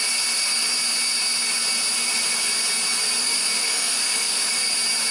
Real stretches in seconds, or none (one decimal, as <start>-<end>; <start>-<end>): 0.0-3.2; 4.5-5.1